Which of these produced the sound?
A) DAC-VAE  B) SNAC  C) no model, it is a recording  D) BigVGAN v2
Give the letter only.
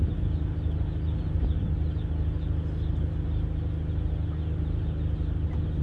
C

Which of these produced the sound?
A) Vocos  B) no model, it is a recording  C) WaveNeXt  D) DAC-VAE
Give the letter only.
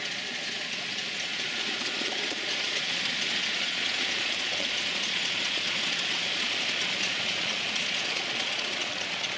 A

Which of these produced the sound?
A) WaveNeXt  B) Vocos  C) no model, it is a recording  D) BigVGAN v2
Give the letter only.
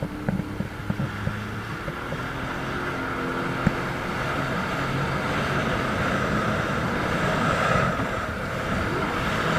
C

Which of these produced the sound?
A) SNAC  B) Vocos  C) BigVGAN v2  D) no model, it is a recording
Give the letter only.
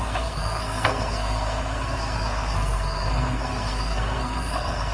A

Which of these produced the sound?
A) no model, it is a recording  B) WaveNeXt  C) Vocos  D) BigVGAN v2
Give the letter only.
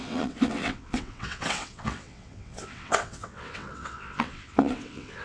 B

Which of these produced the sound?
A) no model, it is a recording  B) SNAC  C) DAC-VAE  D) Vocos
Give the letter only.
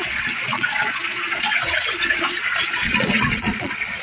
D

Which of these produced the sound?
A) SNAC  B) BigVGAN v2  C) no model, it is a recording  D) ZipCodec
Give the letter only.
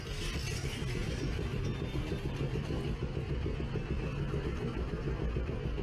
C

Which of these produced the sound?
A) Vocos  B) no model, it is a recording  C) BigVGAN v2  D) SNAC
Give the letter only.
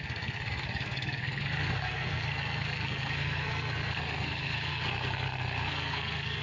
D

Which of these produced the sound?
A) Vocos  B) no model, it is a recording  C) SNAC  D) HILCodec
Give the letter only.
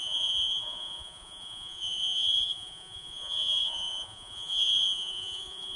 A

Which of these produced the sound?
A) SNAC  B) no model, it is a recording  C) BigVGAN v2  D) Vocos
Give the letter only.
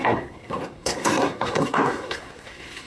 A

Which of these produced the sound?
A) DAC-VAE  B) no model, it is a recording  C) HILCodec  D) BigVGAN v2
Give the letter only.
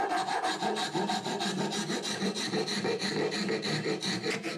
B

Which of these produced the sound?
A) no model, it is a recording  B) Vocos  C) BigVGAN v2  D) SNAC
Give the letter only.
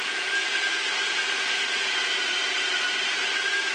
C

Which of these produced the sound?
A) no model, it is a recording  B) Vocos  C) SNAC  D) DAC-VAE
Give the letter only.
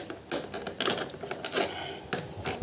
A